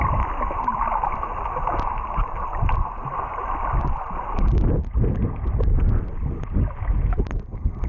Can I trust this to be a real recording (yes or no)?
yes